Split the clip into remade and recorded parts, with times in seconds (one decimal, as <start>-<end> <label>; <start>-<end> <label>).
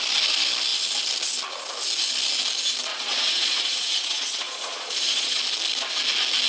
0.0-2.9 recorded; 2.9-5.4 remade; 5.4-6.5 recorded